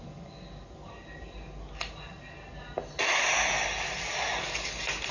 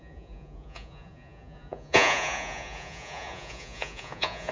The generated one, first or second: second